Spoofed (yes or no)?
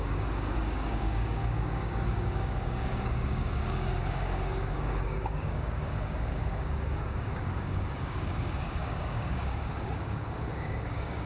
yes